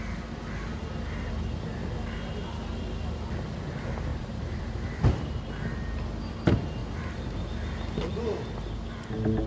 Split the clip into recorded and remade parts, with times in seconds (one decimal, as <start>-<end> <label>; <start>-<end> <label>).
0.0-4.1 recorded; 4.1-5.5 remade; 5.5-6.8 recorded; 6.8-7.4 remade; 7.4-9.5 recorded

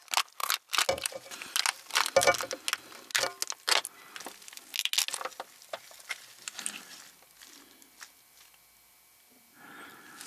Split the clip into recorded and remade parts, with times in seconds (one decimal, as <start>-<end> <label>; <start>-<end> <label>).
0.0-10.3 recorded

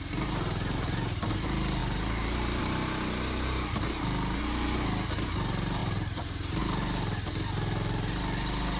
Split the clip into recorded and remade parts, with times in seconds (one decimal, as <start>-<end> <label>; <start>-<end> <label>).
0.0-5.8 recorded; 5.8-6.6 remade; 6.6-8.8 recorded

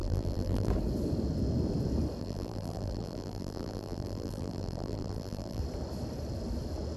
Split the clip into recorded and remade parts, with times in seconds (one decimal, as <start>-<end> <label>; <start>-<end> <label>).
0.0-0.7 remade; 0.7-2.2 recorded; 2.2-5.6 remade; 5.6-7.0 recorded

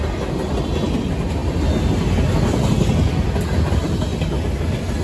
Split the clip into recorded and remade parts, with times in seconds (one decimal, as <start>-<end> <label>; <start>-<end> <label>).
0.0-5.0 recorded

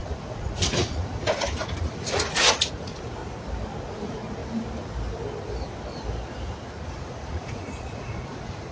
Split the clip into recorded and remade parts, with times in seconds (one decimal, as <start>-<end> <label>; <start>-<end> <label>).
0.0-3.2 remade; 3.2-3.8 recorded; 3.8-4.4 remade; 4.4-6.9 recorded; 6.9-8.7 remade

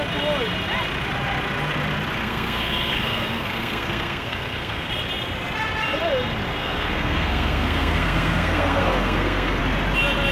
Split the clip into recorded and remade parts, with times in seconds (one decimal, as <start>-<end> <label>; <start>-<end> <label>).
0.0-2.2 recorded; 2.2-4.9 remade; 4.9-6.6 recorded; 6.6-9.6 remade; 9.6-10.3 recorded

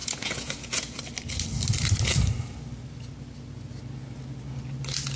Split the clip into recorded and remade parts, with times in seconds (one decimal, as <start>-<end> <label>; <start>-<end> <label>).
0.0-1.0 remade; 1.0-5.2 recorded